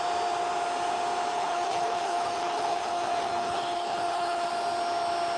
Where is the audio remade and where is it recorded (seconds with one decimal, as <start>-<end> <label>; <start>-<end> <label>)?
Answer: 0.0-1.3 recorded; 1.3-4.5 remade; 4.5-5.4 recorded